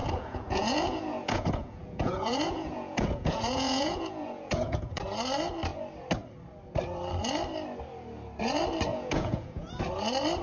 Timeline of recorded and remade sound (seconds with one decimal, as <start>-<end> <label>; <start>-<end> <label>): 0.0-5.0 remade; 5.0-8.9 recorded; 8.9-9.7 remade; 9.7-10.4 recorded